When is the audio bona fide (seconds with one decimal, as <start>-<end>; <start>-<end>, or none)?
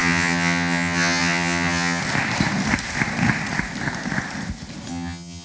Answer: 2.0-4.9